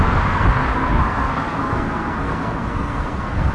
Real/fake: fake